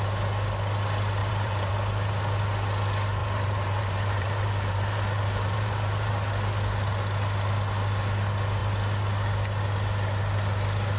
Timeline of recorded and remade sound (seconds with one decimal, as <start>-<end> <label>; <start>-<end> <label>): 0.0-1.2 recorded; 1.2-1.7 remade; 1.7-3.2 recorded; 3.2-6.1 remade; 6.1-11.0 recorded